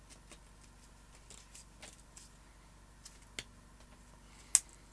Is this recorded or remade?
recorded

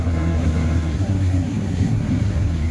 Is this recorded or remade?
remade